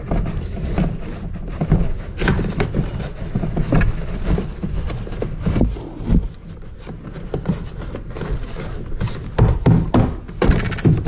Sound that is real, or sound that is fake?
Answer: real